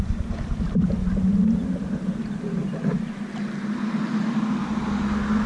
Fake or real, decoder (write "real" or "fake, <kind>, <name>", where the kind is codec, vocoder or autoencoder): real